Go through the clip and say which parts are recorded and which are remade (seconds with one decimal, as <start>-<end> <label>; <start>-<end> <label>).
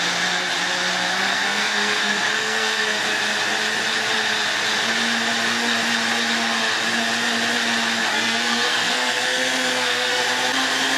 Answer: 0.0-1.3 recorded; 1.3-3.0 remade; 3.0-8.1 recorded; 8.1-10.2 remade; 10.2-11.0 recorded